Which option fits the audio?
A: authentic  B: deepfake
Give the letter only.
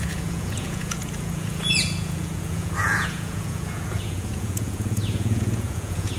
B